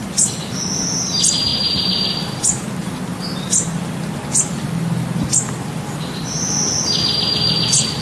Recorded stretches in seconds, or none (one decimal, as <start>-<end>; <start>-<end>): 0.0-8.0